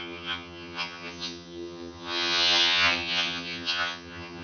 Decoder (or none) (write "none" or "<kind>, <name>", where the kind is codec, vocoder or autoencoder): vocoder, HiFi-GAN